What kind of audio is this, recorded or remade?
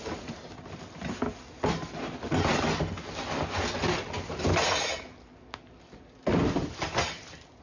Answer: recorded